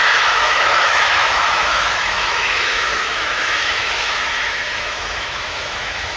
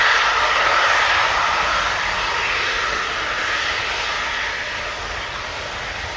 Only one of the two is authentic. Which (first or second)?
second